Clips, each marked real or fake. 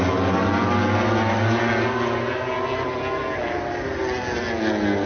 real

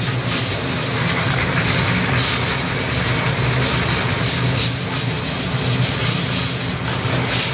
real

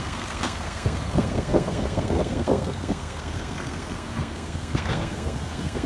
fake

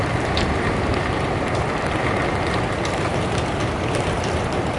real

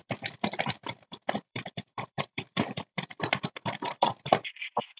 fake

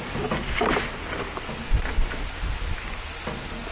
real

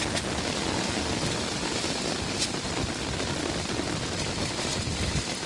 real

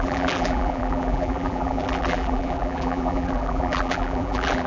fake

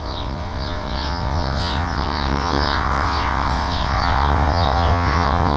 fake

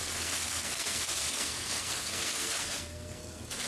fake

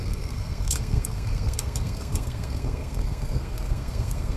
fake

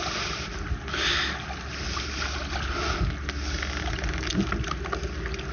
real